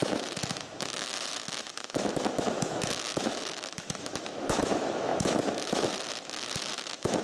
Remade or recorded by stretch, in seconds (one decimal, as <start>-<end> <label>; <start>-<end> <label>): 0.0-7.2 remade